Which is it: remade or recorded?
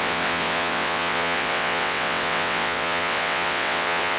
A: remade